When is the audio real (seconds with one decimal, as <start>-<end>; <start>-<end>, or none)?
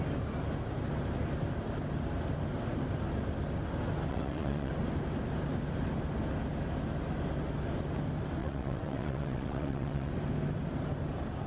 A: 0.0-4.1; 4.7-8.4; 10.1-11.5